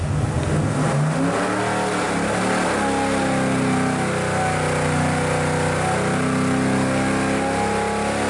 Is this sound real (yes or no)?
yes